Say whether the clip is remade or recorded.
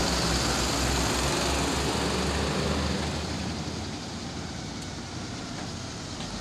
recorded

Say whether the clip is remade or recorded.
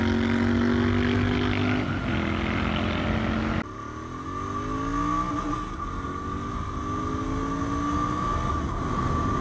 recorded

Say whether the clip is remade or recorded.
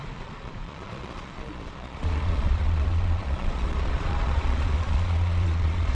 remade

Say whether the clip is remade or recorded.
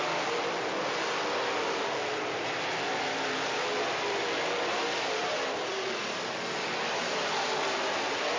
recorded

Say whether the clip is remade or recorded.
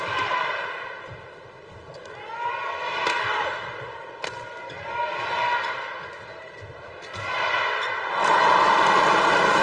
recorded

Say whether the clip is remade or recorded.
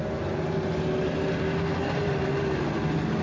recorded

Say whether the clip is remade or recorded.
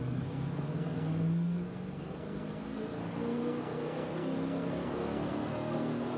remade